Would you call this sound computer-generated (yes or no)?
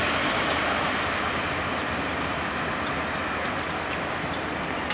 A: no